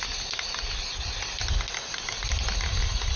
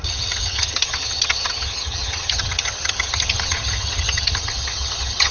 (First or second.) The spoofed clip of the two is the second